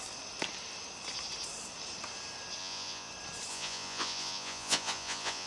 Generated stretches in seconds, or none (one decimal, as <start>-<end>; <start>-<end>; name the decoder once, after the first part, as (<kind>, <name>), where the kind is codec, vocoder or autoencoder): 2.6-3.1 (vocoder, Vocos); 3.5-5.5